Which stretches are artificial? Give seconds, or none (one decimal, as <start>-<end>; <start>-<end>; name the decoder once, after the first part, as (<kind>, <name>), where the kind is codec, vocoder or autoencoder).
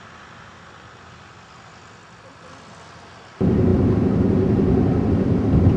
none